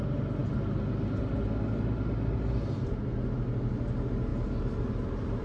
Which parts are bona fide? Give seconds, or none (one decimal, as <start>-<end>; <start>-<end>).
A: 0.0-5.4